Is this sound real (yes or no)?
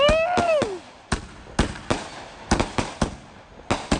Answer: yes